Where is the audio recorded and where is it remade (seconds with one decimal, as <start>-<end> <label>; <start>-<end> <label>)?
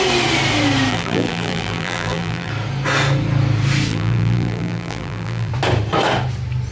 0.0-0.9 recorded; 0.9-2.5 remade; 2.5-3.9 recorded; 3.9-5.5 remade; 5.5-6.7 recorded